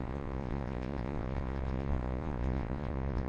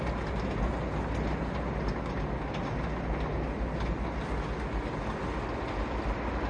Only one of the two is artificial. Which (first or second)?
first